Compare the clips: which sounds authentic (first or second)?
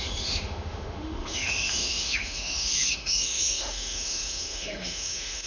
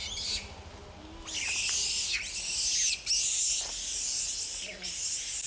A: second